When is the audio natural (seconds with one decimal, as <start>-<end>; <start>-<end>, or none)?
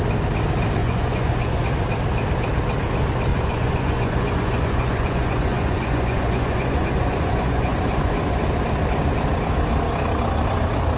0.0-0.8; 1.6-3.3; 8.4-11.0